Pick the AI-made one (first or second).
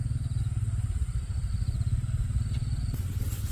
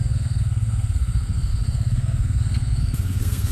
second